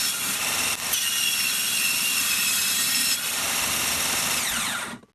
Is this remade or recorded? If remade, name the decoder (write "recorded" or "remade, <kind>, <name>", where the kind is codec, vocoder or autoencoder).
recorded